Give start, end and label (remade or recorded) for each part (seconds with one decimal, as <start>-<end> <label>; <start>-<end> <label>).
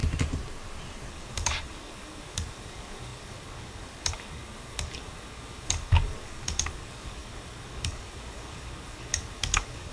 0.0-1.1 recorded; 1.1-9.9 remade